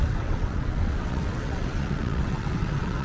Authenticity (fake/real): fake